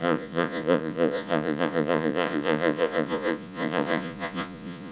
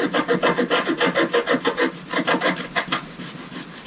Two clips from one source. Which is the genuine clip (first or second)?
second